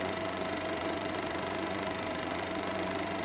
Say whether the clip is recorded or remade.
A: remade